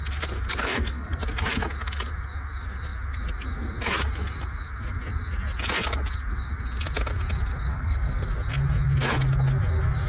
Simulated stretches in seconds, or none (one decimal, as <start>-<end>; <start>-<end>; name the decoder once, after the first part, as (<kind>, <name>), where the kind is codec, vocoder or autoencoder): 0.6-1.2 (codec, SNAC); 7.7-8.2